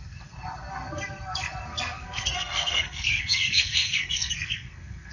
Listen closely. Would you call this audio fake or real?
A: fake